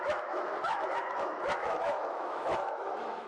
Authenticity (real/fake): fake